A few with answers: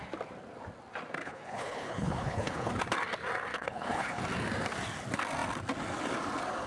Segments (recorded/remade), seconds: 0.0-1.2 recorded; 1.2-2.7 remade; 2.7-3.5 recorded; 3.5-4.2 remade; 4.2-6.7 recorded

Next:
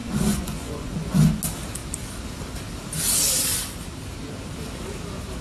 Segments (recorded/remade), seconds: 0.0-1.4 remade; 1.4-5.4 recorded

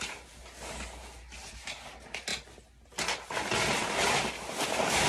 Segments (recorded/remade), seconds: 0.0-5.1 recorded

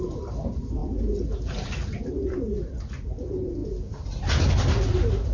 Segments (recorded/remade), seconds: 0.0-5.3 recorded